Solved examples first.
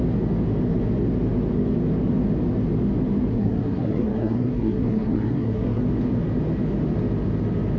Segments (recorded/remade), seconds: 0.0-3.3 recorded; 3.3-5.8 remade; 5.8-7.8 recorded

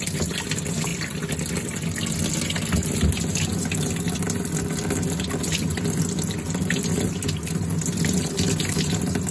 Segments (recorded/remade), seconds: 0.0-9.3 recorded

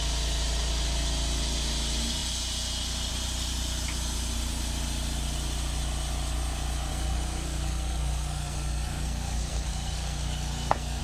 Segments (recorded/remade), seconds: 0.0-6.9 recorded; 6.9-11.0 remade

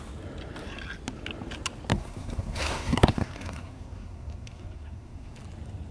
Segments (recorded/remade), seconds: 0.0-1.9 recorded; 1.9-5.4 remade; 5.4-5.9 recorded

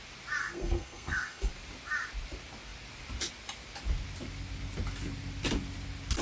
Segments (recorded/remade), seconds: 0.0-0.4 recorded; 0.4-1.5 remade; 1.5-6.2 recorded

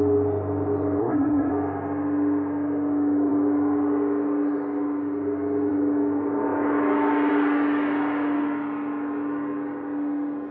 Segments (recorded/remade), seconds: 0.0-1.0 recorded; 1.0-1.5 remade; 1.5-10.5 recorded

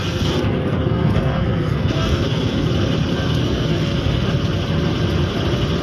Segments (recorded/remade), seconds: 0.0-2.7 remade; 2.7-3.1 recorded; 3.1-4.3 remade; 4.3-5.8 recorded